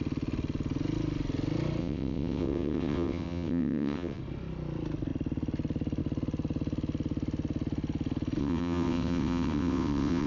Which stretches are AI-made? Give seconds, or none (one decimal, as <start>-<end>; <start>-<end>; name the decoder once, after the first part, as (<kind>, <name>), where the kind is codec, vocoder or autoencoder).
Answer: 1.8-4.2 (vocoder, WaveNeXt); 8.4-10.3